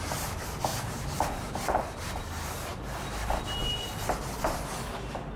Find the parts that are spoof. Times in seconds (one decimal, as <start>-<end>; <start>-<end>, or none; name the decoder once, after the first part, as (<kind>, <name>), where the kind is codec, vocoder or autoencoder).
0.7-3.1 (vocoder, BigVGAN v2); 3.6-4.3